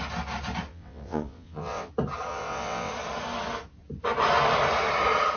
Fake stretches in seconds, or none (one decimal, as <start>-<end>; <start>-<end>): 0.7-1.9; 2.3-2.9